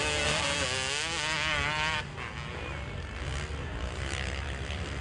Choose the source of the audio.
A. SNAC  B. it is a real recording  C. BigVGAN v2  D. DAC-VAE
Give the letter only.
B